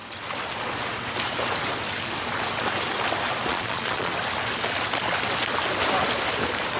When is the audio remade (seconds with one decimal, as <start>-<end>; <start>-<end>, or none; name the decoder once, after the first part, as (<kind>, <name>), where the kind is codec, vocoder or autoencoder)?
3.5-4.1 (vocoder, Vocos)